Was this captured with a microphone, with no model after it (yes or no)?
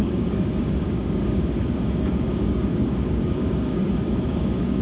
no